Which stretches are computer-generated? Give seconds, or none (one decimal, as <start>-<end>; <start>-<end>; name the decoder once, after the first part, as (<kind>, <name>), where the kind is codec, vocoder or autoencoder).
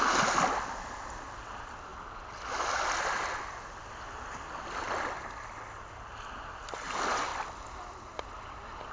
none